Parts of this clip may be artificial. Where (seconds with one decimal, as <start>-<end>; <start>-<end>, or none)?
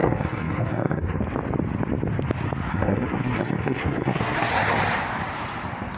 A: 0.0-1.2; 2.7-4.5